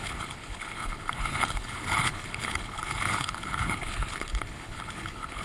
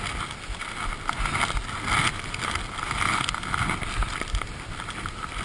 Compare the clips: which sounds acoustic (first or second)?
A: second